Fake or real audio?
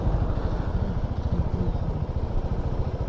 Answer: real